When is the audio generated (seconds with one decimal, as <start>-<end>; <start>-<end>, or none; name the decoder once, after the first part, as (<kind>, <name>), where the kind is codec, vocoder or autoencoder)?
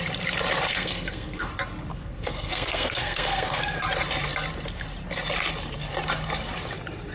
0.7-1.5 (codec, SNAC); 1.9-3.8